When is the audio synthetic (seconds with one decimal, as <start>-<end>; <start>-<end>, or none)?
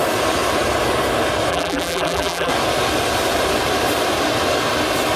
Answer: 1.5-2.5